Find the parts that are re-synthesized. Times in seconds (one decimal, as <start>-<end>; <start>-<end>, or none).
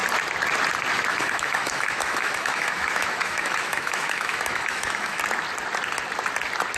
1.1-5.2